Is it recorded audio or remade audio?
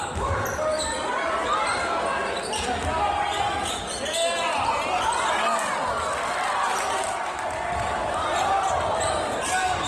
recorded